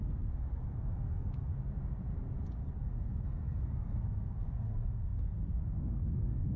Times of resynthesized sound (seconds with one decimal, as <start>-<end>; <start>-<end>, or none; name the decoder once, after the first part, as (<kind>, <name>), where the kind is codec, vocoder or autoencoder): 0.0-1.5 (codec, SNAC); 2.8-6.6